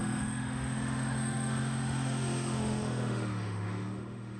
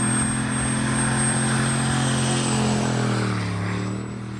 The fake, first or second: first